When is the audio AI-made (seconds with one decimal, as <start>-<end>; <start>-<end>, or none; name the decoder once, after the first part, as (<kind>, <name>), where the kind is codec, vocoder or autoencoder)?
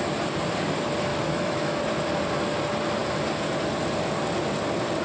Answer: 1.1-1.8 (autoencoder, DAC-VAE)